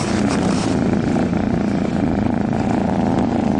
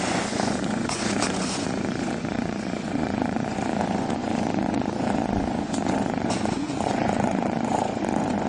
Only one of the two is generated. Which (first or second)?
second